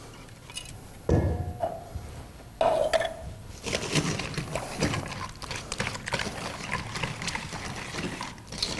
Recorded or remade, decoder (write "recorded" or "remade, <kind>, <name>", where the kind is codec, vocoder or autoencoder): recorded